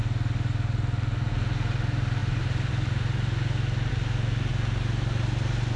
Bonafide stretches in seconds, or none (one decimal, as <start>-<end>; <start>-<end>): 0.0-5.8